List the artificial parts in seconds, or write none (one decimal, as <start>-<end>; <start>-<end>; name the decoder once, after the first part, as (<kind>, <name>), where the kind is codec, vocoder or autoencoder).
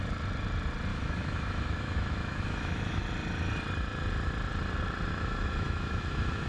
0.9-3.0 (autoencoder, DAC-VAE); 5.1-6.5